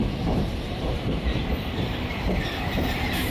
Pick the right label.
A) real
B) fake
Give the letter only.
B